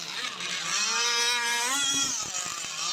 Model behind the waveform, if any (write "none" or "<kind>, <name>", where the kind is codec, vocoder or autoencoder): none